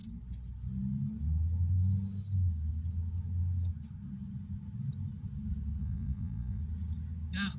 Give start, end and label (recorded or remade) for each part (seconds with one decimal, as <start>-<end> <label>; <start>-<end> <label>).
0.0-5.8 recorded; 5.8-6.6 remade; 6.6-7.6 recorded